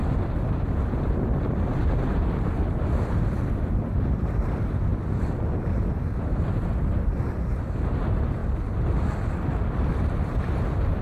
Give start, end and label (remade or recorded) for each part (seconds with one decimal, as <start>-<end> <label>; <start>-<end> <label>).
0.0-0.7 recorded; 0.7-4.9 remade; 4.9-7.4 recorded; 7.4-8.4 remade; 8.4-9.9 recorded; 9.9-11.0 remade